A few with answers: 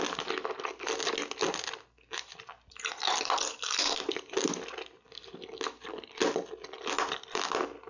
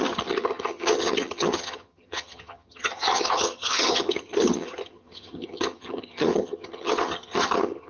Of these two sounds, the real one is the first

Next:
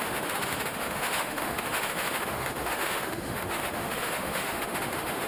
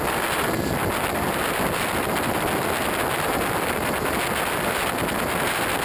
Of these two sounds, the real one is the second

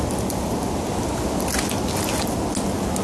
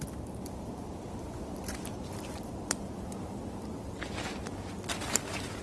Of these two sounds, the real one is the first